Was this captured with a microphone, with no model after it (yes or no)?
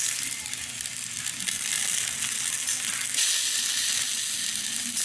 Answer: yes